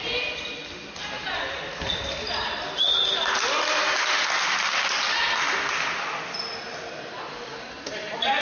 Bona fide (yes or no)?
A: yes